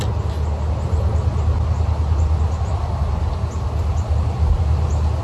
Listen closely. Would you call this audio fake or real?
real